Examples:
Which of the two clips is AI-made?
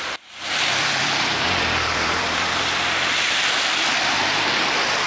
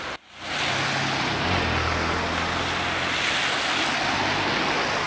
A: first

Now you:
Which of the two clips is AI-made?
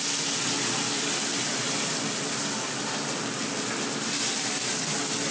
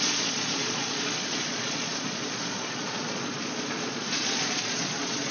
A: second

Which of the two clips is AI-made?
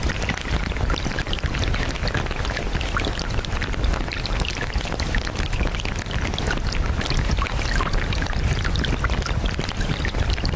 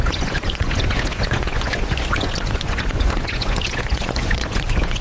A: second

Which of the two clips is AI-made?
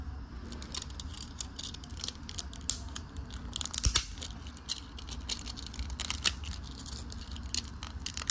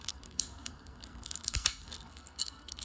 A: second